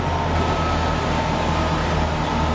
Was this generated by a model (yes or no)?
no